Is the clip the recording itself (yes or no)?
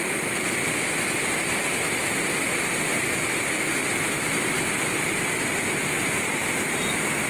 yes